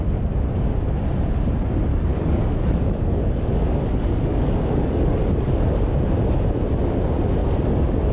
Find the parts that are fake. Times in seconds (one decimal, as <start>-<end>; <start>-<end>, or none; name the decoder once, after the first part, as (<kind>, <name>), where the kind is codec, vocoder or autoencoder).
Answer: 1.9-5.8 (codec, DAC); 7.4-8.1